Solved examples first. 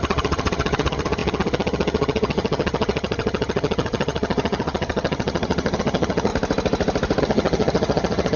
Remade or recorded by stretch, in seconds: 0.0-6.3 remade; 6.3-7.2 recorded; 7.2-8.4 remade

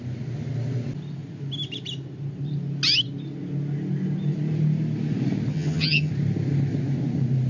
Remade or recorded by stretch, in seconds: 0.0-5.5 recorded; 5.5-6.1 remade; 6.1-7.5 recorded

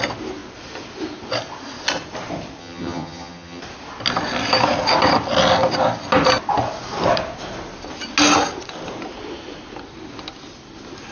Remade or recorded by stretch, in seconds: 0.0-2.6 recorded; 2.6-3.6 remade; 3.6-11.1 recorded

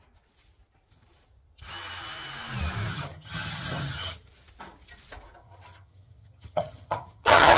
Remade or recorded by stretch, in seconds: 0.0-2.9 recorded; 2.9-4.3 remade; 4.3-5.4 recorded; 5.4-7.6 remade

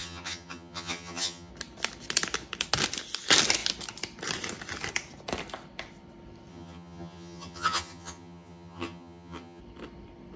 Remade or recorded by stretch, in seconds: 0.0-1.5 remade; 1.5-6.5 recorded; 6.5-9.6 remade; 9.6-10.4 recorded

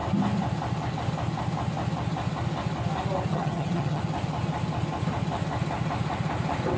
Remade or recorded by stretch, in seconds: 0.0-3.3 recorded; 3.3-4.0 remade; 4.0-6.8 recorded

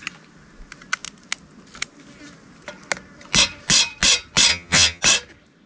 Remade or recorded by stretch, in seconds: 0.0-4.5 recorded; 4.5-5.0 remade; 5.0-5.7 recorded